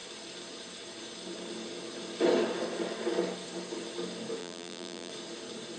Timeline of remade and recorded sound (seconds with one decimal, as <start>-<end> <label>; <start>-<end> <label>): 0.0-4.4 recorded; 4.4-5.1 remade; 5.1-5.8 recorded

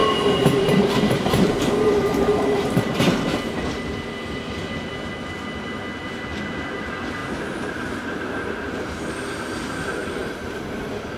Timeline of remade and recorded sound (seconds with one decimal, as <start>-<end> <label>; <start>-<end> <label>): 0.0-3.3 remade; 3.3-7.2 recorded; 7.2-9.1 remade; 9.1-11.2 recorded

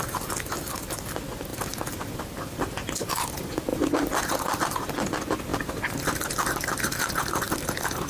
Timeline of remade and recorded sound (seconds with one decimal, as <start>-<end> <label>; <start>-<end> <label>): 0.0-3.7 recorded; 3.7-4.6 remade; 4.6-8.1 recorded